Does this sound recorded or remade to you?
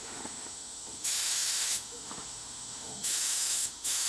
remade